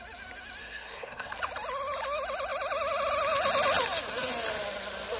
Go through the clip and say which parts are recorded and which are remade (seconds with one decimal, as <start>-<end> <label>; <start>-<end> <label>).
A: 0.0-0.6 recorded; 0.6-1.3 remade; 1.3-5.2 recorded